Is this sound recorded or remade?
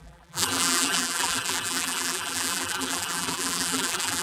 remade